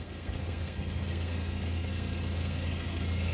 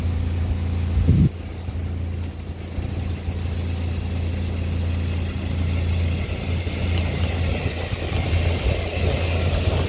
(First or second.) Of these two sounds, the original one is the second